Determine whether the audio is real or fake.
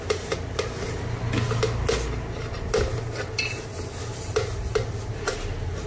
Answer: real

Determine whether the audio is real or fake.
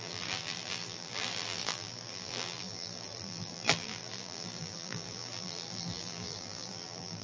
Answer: fake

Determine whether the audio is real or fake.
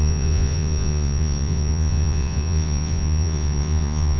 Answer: fake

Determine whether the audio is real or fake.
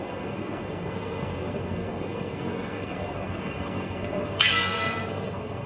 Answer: fake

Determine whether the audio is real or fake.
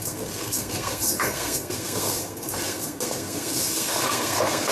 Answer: fake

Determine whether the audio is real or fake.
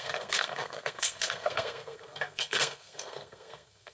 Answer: fake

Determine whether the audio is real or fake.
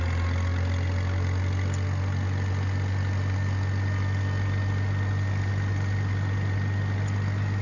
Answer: real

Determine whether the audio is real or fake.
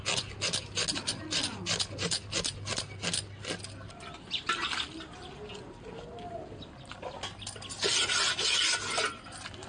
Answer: real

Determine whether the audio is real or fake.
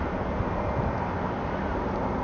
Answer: real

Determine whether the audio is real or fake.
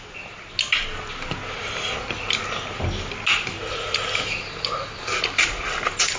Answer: real